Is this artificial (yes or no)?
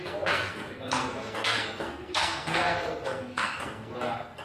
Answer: yes